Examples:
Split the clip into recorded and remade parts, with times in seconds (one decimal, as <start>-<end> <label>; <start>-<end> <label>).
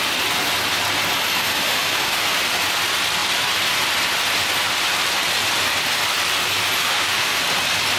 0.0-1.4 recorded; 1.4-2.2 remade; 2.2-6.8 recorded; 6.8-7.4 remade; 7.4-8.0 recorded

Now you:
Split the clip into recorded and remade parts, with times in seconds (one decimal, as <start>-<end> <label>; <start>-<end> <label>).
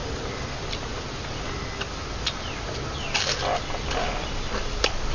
0.0-5.1 recorded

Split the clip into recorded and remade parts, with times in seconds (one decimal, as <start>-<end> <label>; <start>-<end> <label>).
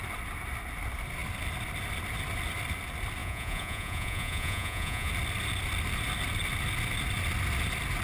0.0-3.2 recorded; 3.2-5.1 remade; 5.1-8.0 recorded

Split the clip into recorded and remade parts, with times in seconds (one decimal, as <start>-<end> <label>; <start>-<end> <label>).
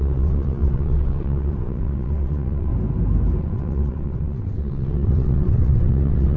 0.0-2.7 remade; 2.7-3.4 recorded; 3.4-6.4 remade